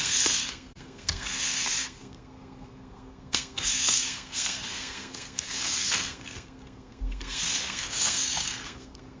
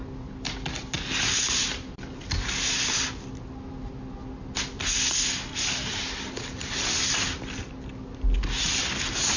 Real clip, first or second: second